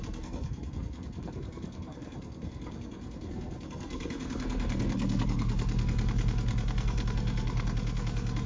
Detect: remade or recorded remade